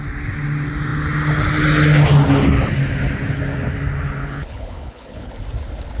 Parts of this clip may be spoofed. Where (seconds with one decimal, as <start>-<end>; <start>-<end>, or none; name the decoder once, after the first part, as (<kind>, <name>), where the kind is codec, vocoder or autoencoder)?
4.2-5.3 (codec, HILCodec)